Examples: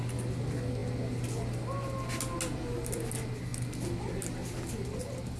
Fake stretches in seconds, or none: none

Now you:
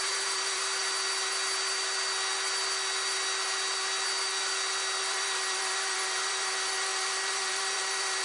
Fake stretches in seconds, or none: 0.0-0.8 (vocoder, BigVGAN v2); 5.0-8.2

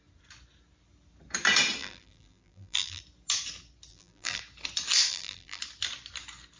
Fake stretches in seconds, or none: 1.8-3.0 (vocoder, BigVGAN v2); 3.9-4.4; 5.1-5.6

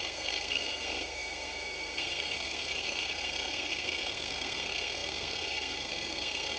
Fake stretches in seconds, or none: 0.0-6.6 (codec, SNAC)

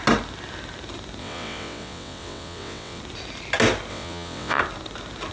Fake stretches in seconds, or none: 1.2-3.0 (vocoder, WaveNeXt); 3.9-4.6

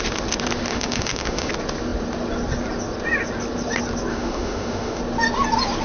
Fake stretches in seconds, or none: 0.7-1.5 (autoencoder, DAC-VAE); 4.1-5.0

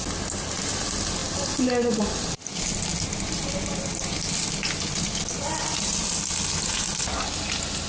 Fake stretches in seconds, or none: none